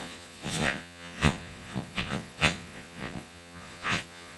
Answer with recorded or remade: remade